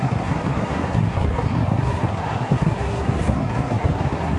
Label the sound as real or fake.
fake